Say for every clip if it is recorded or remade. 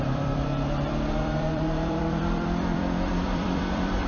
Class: remade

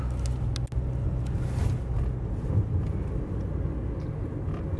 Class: recorded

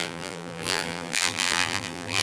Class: remade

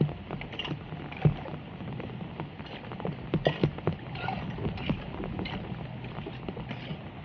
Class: recorded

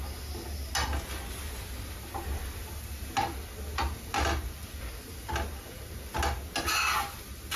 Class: recorded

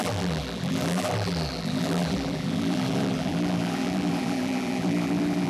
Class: remade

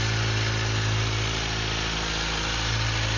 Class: recorded